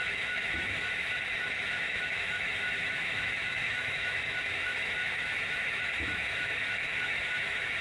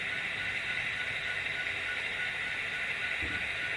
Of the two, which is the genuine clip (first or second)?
second